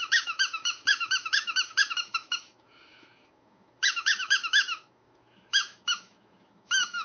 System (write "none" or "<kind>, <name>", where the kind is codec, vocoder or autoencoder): autoencoder, DAC-VAE